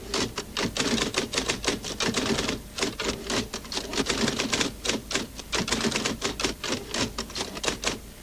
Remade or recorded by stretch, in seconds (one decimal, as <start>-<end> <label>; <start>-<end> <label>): 0.0-8.2 recorded